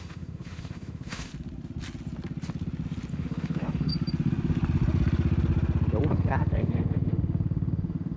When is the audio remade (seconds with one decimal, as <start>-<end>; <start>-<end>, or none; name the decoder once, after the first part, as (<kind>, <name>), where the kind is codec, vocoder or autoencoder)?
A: 0.0-1.3 (autoencoder, DAC-VAE); 3.1-3.9; 6.1-8.2